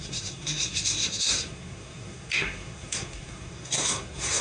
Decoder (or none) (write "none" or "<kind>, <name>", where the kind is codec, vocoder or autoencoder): codec, SNAC